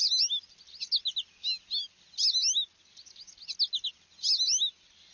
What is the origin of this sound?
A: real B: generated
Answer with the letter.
A